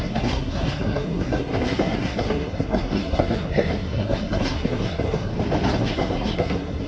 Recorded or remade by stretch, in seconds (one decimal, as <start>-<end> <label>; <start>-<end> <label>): 0.0-5.3 remade; 5.3-5.8 recorded; 5.8-6.9 remade